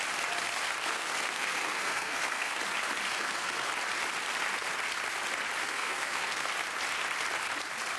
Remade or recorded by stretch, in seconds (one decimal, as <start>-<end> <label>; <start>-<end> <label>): 0.0-0.9 recorded; 0.9-2.6 remade; 2.6-3.1 recorded; 3.1-3.7 remade; 3.7-5.6 recorded; 5.6-6.5 remade; 6.5-8.0 recorded